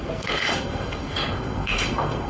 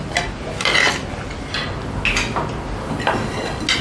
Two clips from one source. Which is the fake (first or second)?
first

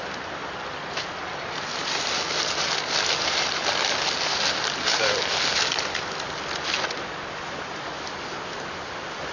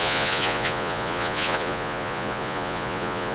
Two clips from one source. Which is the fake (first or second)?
second